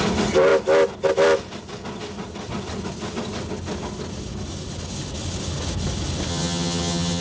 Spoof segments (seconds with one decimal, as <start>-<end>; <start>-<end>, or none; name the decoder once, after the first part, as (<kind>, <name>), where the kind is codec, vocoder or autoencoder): 6.3-7.2 (vocoder, HiFi-GAN)